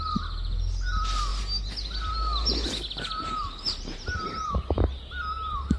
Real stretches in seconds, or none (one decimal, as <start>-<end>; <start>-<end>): 0.0-5.8